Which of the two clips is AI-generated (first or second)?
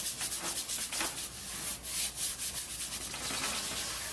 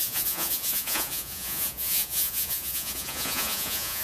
second